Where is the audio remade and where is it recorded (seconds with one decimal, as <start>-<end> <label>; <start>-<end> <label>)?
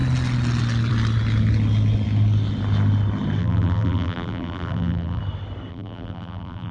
0.0-3.4 recorded; 3.4-5.2 remade; 5.2-5.7 recorded; 5.7-6.7 remade